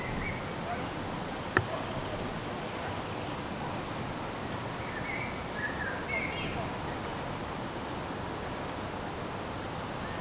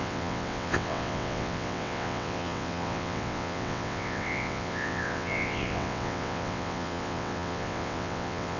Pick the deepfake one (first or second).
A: second